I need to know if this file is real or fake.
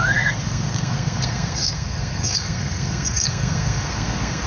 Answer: fake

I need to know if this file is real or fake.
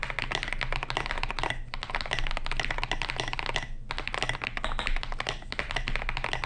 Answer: real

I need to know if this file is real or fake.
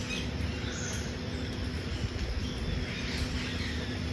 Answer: real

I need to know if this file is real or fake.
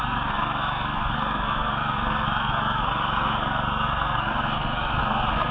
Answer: fake